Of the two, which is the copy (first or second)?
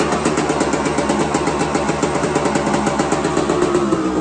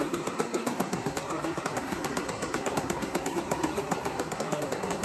second